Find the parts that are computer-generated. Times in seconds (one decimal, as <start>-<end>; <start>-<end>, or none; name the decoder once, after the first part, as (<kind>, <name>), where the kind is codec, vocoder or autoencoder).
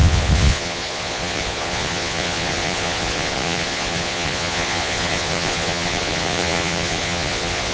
0.0-7.7 (vocoder, Vocos)